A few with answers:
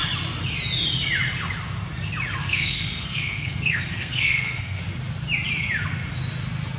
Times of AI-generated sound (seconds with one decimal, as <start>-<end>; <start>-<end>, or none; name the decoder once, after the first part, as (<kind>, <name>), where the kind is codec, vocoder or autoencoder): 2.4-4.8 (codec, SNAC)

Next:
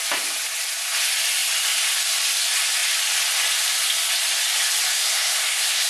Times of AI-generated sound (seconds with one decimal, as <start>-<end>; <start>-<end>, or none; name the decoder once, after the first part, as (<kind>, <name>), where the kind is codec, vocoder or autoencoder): 4.9-5.9 (codec, SNAC)

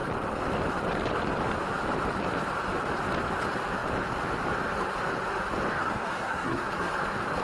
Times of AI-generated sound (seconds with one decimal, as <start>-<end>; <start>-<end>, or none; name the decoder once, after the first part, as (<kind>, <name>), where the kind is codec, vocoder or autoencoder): 5.8-6.9 (codec, SNAC)

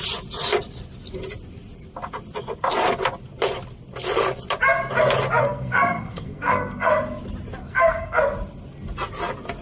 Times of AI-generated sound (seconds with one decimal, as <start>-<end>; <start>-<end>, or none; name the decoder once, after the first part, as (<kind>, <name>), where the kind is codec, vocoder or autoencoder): 5.4-6.9 (codec, SNAC); 7.6-8.2